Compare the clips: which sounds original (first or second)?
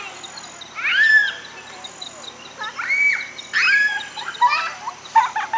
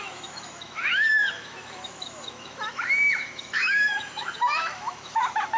first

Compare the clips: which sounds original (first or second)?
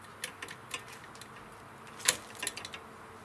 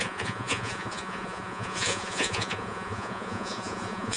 first